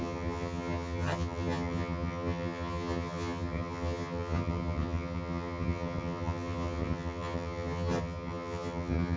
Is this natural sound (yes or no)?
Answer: no